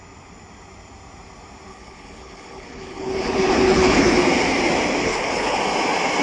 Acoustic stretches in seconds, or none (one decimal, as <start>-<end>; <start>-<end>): 0.0-1.7; 4.1-5.0; 5.6-6.2